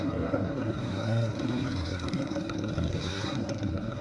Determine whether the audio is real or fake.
fake